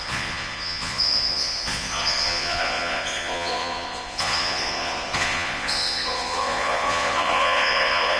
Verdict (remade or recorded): remade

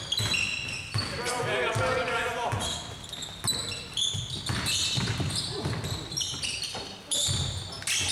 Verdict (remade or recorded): recorded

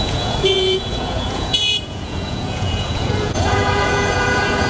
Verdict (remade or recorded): remade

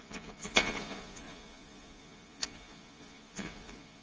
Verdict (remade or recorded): remade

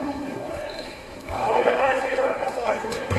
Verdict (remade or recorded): remade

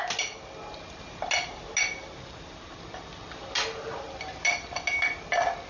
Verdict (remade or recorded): recorded